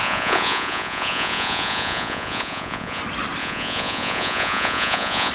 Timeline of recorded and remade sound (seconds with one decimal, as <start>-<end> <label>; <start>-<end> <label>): 0.0-3.0 remade; 3.0-3.4 recorded; 3.4-5.3 remade